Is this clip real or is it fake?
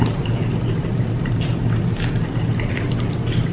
real